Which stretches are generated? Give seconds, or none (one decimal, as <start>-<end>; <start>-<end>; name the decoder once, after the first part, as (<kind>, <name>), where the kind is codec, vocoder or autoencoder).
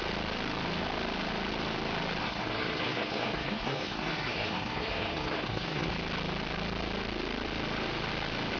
2.2-5.9 (codec, SNAC)